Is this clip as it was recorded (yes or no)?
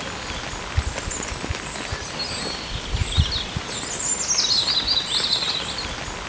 yes